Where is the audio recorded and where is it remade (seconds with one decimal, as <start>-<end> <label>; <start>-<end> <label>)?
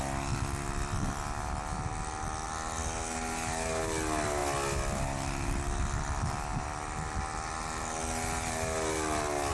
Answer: 0.0-9.5 recorded